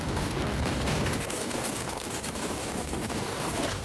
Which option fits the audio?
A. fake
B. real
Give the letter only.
A